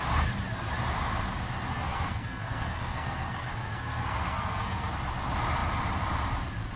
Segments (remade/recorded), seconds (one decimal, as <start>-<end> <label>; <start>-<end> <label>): 0.0-1.7 recorded; 1.7-4.9 remade; 4.9-6.8 recorded